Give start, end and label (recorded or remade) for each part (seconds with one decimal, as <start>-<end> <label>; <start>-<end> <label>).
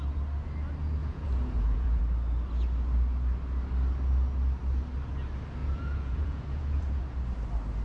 0.0-1.0 recorded; 1.0-2.0 remade; 2.0-5.6 recorded; 5.6-7.0 remade; 7.0-7.8 recorded